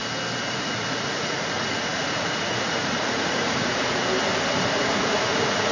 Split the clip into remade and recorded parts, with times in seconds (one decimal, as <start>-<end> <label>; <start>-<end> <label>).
0.0-0.5 recorded; 0.5-4.0 remade; 4.0-4.8 recorded; 4.8-5.7 remade